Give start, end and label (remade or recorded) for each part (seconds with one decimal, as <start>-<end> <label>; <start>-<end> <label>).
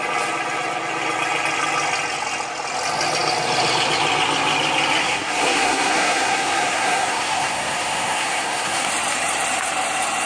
0.0-5.0 recorded; 5.0-8.9 remade; 8.9-10.3 recorded